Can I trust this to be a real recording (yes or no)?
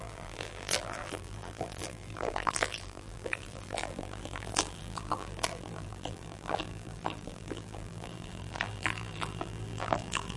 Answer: no